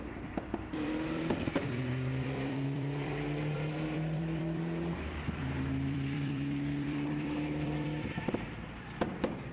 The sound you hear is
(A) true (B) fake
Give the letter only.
B